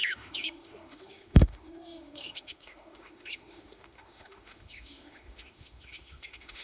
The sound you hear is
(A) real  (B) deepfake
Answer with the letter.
B